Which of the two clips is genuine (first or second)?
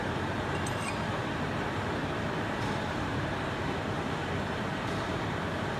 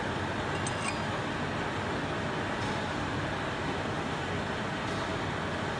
second